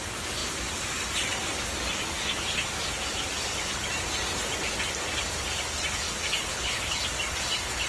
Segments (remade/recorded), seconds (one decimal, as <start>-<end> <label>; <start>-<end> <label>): 0.0-6.4 recorded; 6.4-7.0 remade; 7.0-7.9 recorded